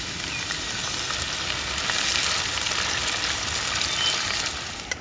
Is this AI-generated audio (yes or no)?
no